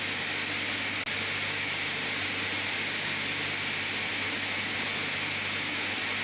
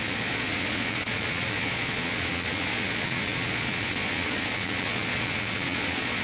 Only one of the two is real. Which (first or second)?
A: first